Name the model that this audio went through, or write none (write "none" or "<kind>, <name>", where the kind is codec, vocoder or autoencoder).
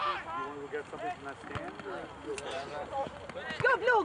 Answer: none